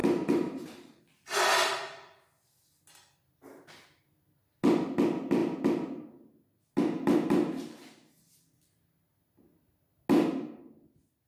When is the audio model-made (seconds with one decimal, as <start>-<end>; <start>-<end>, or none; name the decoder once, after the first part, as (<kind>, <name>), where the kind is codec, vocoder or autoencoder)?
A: 0.0-1.0 (vocoder, BigVGAN v2)